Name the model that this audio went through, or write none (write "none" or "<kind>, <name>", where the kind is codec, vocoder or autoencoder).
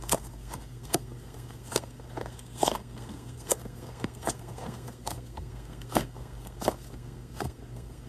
codec, SNAC